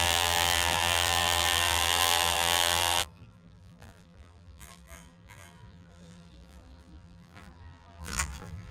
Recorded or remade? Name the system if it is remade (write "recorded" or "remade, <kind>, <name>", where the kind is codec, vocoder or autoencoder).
remade, vocoder, BigVGAN v2